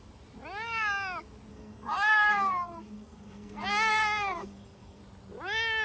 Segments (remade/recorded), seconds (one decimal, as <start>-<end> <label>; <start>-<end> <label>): 0.0-1.5 recorded; 1.5-5.0 remade; 5.0-5.8 recorded